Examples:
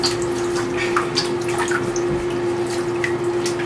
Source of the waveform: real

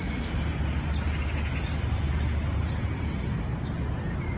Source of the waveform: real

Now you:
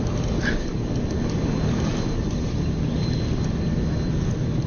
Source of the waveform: real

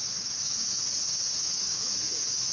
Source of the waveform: fake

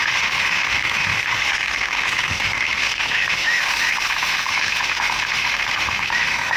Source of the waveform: fake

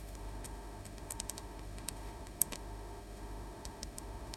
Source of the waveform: fake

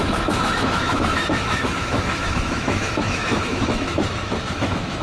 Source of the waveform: fake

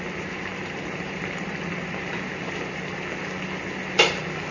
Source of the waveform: real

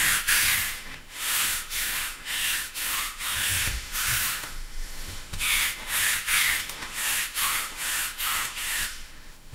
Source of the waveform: fake